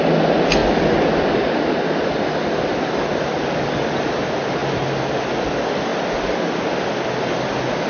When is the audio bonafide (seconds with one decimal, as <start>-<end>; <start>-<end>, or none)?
0.0-7.9